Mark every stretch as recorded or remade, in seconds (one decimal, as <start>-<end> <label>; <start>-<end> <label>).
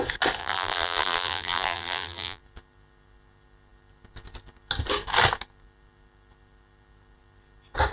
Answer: 0.0-0.4 recorded; 0.4-2.4 remade; 2.4-7.9 recorded